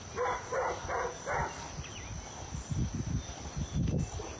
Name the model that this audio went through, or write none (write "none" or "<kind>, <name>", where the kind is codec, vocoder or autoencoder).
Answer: none